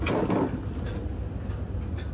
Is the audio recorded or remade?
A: recorded